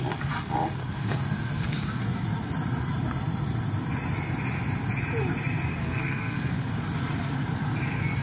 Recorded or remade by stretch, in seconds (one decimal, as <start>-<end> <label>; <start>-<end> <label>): 0.0-0.8 recorded; 0.8-2.0 remade; 2.0-5.8 recorded; 5.8-6.5 remade; 6.5-8.2 recorded